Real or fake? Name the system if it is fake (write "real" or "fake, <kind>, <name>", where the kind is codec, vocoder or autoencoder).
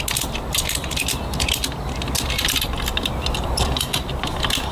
real